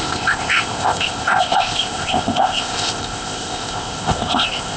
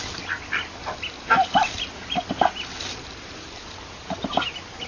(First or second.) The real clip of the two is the second